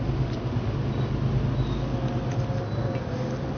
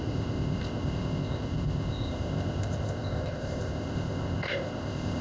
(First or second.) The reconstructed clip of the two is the second